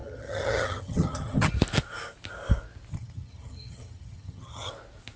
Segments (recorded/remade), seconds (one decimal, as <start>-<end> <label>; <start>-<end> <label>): 0.0-1.5 remade; 1.5-2.9 recorded; 2.9-4.7 remade; 4.7-5.2 recorded